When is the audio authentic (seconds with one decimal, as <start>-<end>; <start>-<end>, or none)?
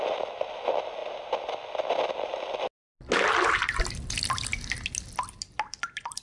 0.0-6.2